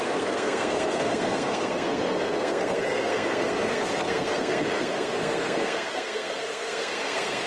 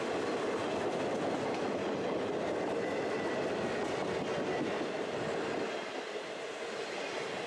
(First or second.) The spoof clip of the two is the first